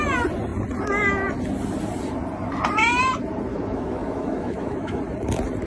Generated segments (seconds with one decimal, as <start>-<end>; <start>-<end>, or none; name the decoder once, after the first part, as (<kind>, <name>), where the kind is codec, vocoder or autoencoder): 3.5-5.0 (autoencoder, DAC-VAE)